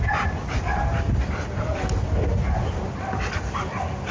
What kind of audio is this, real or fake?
real